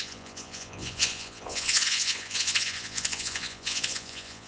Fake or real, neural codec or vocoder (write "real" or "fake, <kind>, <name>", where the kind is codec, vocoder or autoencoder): fake, vocoder, Vocos